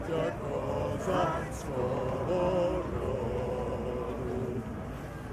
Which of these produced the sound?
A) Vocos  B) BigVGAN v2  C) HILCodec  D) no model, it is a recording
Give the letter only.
D